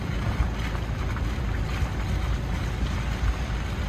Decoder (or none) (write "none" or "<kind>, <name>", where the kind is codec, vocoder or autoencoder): none